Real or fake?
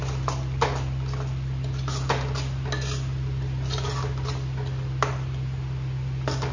real